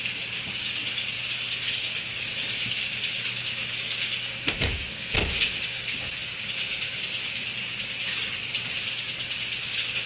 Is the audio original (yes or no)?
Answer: no